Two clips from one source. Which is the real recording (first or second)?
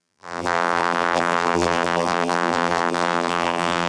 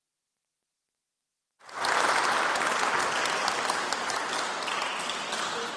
second